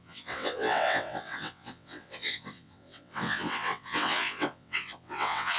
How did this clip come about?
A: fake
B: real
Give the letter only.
A